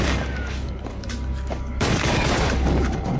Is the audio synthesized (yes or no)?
yes